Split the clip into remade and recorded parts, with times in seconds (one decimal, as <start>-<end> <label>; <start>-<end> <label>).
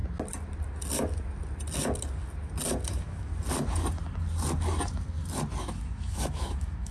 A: 0.0-2.9 recorded; 2.9-3.3 remade; 3.3-5.6 recorded; 5.6-6.9 remade